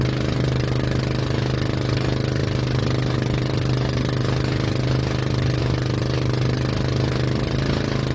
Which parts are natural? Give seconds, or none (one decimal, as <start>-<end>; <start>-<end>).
0.0-8.1